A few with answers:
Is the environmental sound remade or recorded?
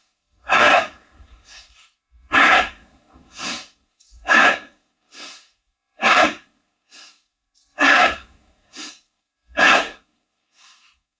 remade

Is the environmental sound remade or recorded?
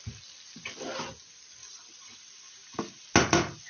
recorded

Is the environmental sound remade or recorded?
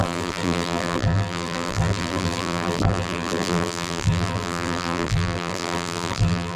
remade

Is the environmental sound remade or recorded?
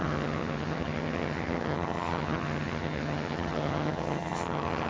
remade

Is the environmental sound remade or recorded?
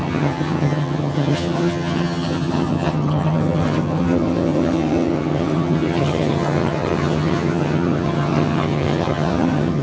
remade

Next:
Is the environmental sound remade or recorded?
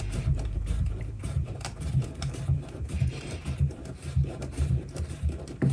remade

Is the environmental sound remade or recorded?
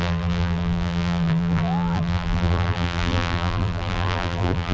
remade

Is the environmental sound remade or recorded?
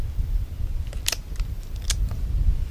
recorded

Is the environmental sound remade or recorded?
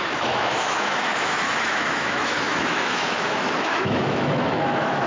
remade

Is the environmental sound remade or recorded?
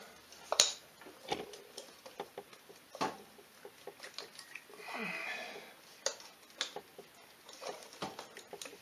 recorded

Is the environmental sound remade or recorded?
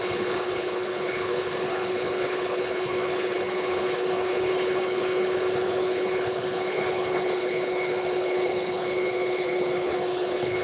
remade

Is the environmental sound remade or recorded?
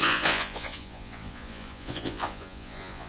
remade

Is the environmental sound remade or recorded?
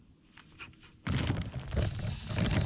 recorded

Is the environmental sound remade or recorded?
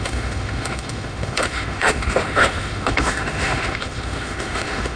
remade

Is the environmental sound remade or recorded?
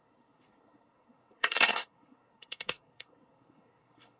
remade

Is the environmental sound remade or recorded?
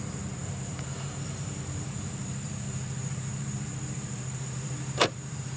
remade